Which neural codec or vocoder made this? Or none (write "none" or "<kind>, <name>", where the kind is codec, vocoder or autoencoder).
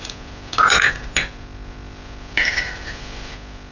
none